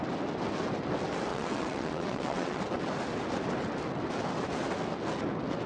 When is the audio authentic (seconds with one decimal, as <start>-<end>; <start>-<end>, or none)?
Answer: 0.0-1.3; 2.6-5.7

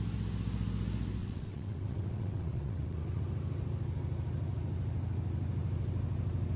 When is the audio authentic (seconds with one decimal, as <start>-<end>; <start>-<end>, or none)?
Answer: 0.0-1.2; 3.2-6.6

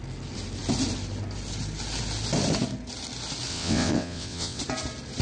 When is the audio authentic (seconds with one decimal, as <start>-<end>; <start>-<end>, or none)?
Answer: 0.0-3.5; 4.6-5.2